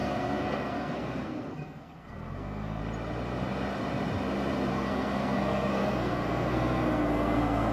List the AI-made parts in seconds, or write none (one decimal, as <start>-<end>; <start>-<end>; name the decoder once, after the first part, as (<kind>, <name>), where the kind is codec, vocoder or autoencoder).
0.0-2.8 (codec, SNAC); 4.7-7.7